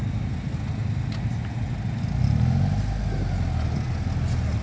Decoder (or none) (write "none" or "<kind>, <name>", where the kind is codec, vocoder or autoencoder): none